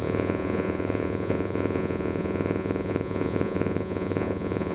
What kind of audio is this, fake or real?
fake